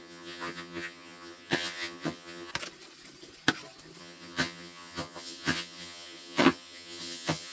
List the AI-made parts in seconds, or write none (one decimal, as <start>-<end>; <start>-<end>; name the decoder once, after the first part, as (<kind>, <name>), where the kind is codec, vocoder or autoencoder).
0.0-2.5 (vocoder, HiFi-GAN); 4.0-7.5